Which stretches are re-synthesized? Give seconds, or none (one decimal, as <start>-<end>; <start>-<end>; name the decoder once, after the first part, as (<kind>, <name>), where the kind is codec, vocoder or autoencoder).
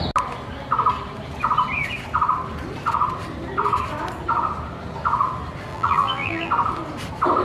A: 5.7-6.5 (vocoder, BigVGAN v2)